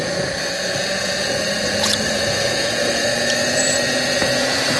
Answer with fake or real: fake